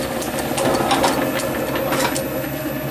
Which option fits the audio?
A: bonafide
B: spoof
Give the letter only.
A